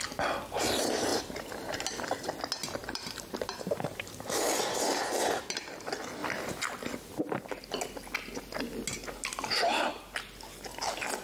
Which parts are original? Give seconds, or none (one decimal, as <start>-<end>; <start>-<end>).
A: 0.0-1.1; 1.8-2.8; 4.6-11.2